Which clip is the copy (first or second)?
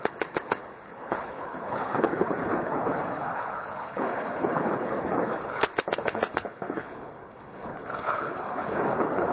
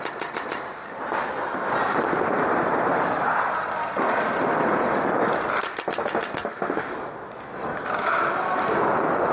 first